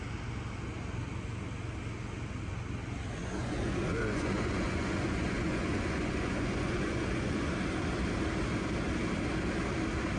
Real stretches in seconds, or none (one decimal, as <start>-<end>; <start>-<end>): 0.0-3.2; 7.5-10.2